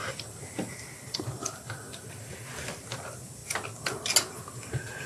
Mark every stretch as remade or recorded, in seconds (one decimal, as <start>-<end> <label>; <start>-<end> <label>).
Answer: 0.0-5.1 recorded

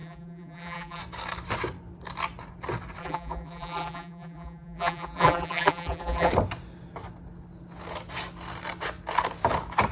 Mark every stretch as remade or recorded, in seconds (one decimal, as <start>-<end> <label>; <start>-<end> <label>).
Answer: 0.0-1.0 remade; 1.0-3.0 recorded; 3.0-6.3 remade; 6.3-9.9 recorded

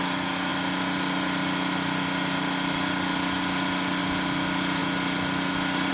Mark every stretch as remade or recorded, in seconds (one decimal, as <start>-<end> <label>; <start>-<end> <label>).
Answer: 0.0-5.9 recorded

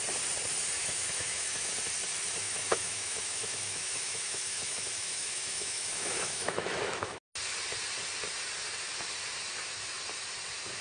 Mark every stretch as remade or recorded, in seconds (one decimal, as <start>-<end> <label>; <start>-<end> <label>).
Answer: 0.0-0.8 recorded; 0.8-1.7 remade; 1.7-2.4 recorded; 2.4-7.2 remade; 7.2-10.8 recorded